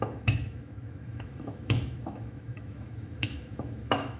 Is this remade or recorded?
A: remade